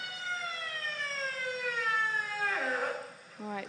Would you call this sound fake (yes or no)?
no